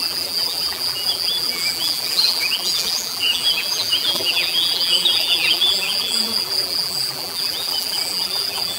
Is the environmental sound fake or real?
fake